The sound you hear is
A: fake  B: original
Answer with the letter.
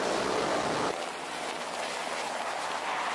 B